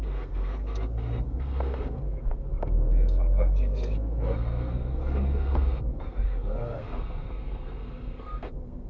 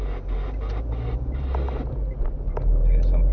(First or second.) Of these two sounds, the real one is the second